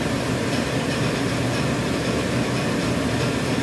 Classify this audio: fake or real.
real